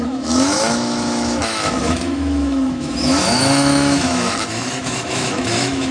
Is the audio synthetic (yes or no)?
yes